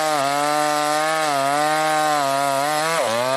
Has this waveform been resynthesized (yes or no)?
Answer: no